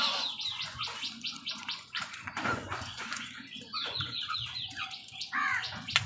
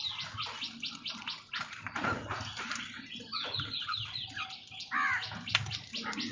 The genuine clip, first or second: second